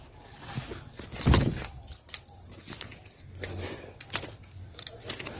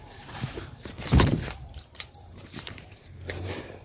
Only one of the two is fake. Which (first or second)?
second